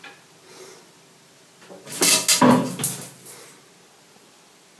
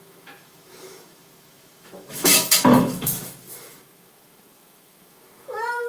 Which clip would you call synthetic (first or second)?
second